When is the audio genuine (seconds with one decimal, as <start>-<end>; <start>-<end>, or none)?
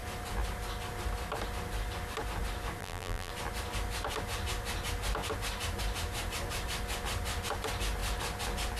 0.0-2.8; 3.3-8.8